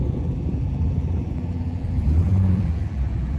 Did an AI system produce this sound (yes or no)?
yes